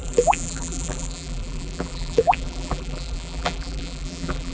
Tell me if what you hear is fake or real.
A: fake